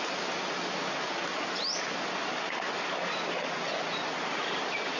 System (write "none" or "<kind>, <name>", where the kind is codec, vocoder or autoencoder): none